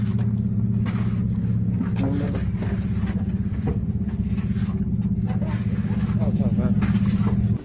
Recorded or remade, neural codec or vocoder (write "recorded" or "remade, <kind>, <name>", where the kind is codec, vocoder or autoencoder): recorded